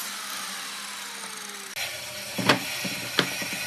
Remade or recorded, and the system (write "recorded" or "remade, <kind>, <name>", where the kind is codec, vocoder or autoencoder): recorded